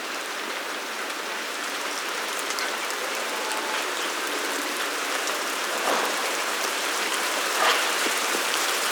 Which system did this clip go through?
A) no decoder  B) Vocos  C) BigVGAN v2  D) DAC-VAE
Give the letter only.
C